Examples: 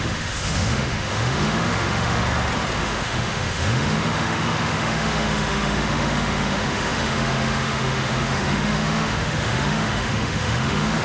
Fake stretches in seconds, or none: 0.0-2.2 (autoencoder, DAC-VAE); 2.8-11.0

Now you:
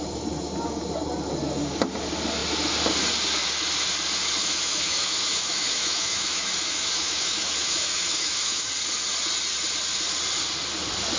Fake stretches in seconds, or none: 4.4-8.7 (autoencoder, DAC-VAE)

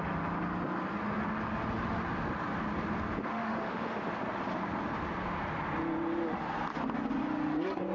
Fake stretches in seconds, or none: 3.3-4.0 (autoencoder, DAC-VAE)

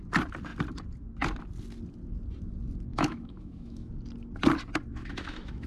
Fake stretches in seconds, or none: 2.9-3.9 (autoencoder, DAC-VAE); 4.9-5.7

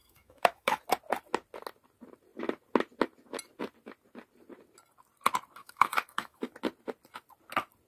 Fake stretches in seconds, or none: 0.0-0.8 (autoencoder, DAC-VAE); 5.6-6.5